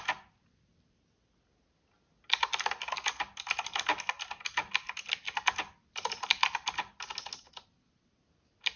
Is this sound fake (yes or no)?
no